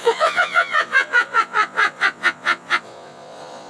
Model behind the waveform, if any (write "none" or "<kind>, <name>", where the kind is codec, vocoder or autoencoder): vocoder, Vocos